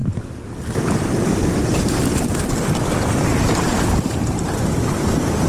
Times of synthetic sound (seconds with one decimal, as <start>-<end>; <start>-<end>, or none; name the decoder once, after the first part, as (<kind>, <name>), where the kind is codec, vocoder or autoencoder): 3.3-4.6 (vocoder, BigVGAN v2)